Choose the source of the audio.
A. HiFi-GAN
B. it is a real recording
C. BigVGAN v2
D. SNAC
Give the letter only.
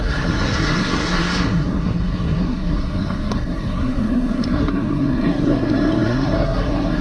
D